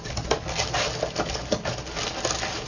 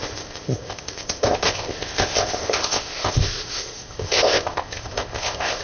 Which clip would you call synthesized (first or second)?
second